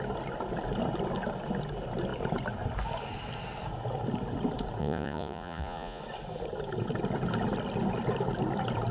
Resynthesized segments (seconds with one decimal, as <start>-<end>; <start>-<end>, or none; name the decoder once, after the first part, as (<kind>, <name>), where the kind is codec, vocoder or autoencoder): 4.8-6.0 (vocoder, Vocos)